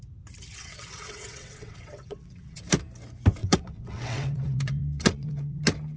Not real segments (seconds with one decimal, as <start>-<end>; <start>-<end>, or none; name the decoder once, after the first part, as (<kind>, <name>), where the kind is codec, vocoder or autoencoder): 0.5-2.6 (vocoder, WaveNeXt); 3.4-5.6